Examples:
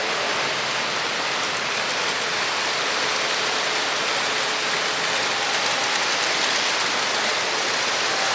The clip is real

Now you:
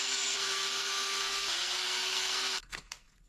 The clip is fake